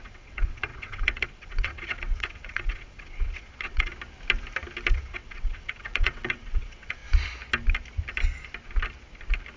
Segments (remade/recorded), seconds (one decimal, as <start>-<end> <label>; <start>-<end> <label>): 0.0-3.9 remade; 3.9-4.9 recorded; 4.9-7.0 remade; 7.0-9.6 recorded